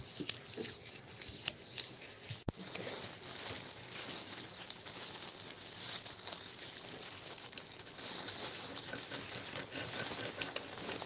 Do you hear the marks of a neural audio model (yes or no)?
no